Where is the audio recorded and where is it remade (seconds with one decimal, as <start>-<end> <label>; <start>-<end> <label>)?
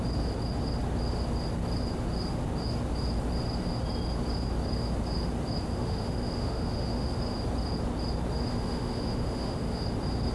0.0-5.7 recorded; 5.7-7.2 remade; 7.2-8.5 recorded; 8.5-9.8 remade; 9.8-10.3 recorded